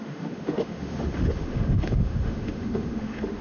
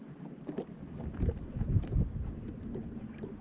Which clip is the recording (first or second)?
second